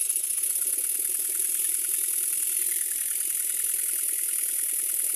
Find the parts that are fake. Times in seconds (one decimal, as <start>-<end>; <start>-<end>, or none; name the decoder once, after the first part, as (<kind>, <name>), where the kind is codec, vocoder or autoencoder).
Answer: 1.1-5.2 (vocoder, BigVGAN v2)